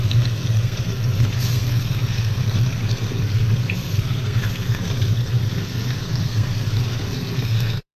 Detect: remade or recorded remade